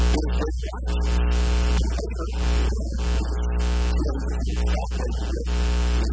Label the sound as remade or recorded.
recorded